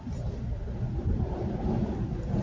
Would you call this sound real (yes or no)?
yes